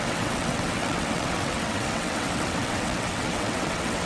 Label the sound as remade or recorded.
remade